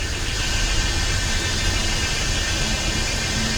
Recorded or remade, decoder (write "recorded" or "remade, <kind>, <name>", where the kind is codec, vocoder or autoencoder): remade, vocoder, BigVGAN v2